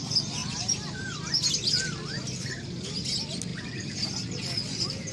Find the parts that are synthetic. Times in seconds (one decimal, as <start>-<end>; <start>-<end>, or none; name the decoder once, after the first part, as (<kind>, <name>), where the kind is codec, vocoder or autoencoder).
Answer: 0.4-1.3 (vocoder, BigVGAN v2)